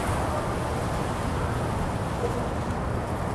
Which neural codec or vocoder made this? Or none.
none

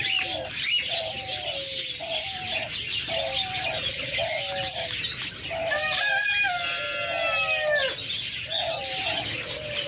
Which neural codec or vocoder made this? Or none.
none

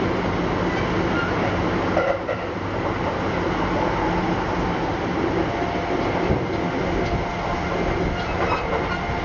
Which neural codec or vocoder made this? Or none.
none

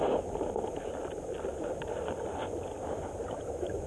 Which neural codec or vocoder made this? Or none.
none